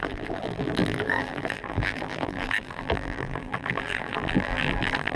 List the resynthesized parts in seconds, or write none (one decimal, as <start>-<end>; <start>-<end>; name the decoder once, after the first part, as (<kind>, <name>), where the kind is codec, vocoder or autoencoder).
0.0-5.2 (vocoder, BigVGAN v2)

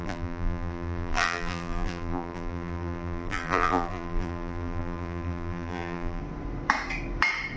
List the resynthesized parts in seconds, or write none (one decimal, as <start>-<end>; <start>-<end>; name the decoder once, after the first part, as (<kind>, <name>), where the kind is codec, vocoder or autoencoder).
0.0-6.2 (vocoder, BigVGAN v2)

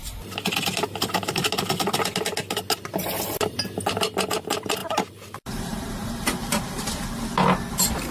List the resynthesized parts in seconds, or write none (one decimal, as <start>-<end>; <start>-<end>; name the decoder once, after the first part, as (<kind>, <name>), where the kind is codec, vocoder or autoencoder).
4.8-6.9 (vocoder, BigVGAN v2)

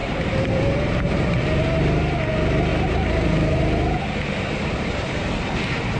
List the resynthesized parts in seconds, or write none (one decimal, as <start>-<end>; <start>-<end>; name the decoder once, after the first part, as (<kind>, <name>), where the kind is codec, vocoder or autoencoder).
0.0-2.0 (vocoder, BigVGAN v2); 2.7-3.6

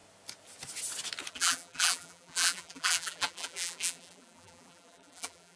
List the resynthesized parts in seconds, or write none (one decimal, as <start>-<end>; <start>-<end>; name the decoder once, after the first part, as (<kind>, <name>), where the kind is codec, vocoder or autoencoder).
1.3-5.6 (vocoder, BigVGAN v2)